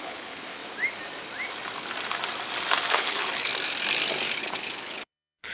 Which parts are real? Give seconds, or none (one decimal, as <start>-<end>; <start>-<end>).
0.6-2.9; 3.5-4.4